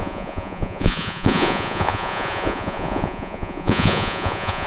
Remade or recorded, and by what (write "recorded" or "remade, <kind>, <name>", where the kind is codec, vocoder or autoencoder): remade, vocoder, Vocos